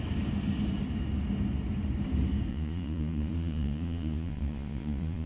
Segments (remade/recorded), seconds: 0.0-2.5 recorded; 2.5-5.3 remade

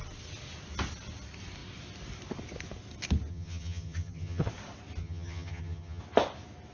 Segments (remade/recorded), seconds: 0.0-3.3 recorded; 3.3-4.5 remade; 4.5-5.0 recorded; 5.0-6.0 remade; 6.0-6.7 recorded

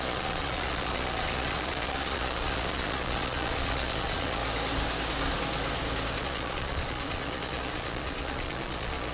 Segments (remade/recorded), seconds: 0.0-4.4 remade; 4.4-6.2 recorded; 6.2-9.1 remade

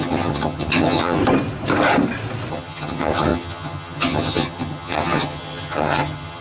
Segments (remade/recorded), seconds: 0.0-1.2 remade; 1.2-2.5 recorded; 2.5-6.4 remade